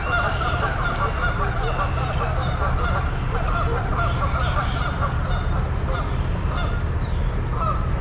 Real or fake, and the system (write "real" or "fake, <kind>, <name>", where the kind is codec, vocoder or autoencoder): real